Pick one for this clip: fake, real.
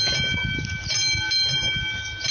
real